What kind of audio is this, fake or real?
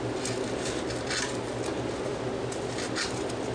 real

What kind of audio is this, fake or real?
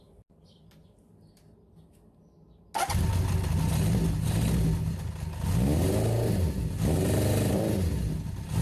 real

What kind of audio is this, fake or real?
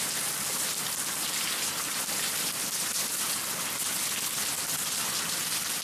real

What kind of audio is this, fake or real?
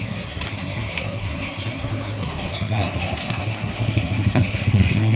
fake